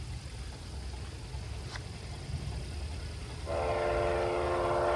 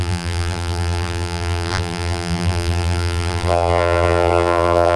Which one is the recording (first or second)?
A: first